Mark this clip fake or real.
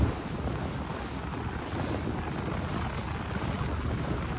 real